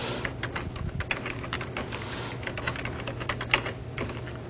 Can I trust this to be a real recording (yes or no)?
yes